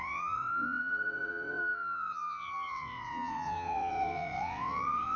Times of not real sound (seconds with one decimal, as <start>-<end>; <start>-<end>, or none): 0.0-5.2